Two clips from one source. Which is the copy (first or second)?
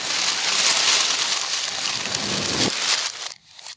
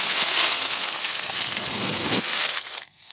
second